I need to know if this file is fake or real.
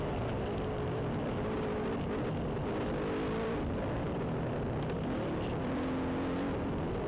real